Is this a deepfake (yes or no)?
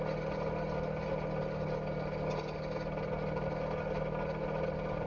no